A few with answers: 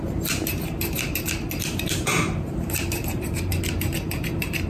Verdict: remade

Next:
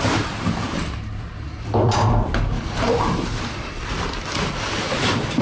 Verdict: remade